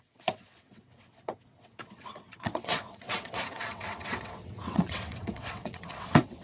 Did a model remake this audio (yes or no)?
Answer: yes